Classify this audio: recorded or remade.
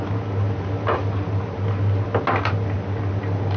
recorded